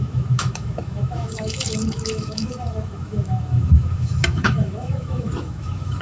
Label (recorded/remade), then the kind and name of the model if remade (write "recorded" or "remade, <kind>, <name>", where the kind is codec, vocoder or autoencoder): remade, autoencoder, DAC-VAE